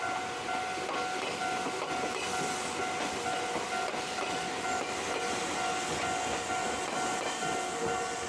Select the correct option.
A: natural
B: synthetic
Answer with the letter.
A